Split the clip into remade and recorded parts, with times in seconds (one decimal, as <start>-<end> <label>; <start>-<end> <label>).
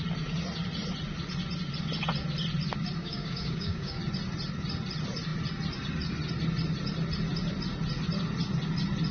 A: 0.0-3.0 recorded; 3.0-4.0 remade; 4.0-9.1 recorded